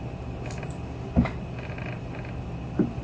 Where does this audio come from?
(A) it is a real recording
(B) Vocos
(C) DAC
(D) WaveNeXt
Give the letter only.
A